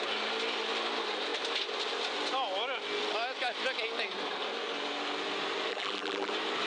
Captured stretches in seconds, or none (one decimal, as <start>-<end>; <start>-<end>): 0.0-5.7; 6.3-6.7